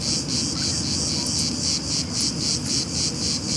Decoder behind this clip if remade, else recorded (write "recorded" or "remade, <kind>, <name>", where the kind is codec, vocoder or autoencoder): recorded